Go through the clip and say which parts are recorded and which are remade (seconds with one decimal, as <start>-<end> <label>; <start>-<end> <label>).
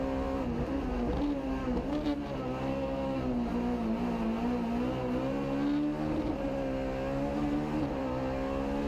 0.0-1.6 recorded; 1.6-2.2 remade; 2.2-2.7 recorded; 2.7-3.2 remade; 3.2-8.9 recorded